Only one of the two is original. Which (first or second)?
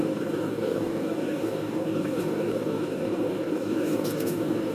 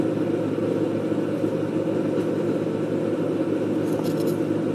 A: second